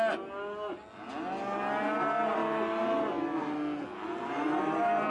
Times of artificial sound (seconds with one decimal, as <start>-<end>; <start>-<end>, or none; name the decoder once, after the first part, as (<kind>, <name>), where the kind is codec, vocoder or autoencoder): none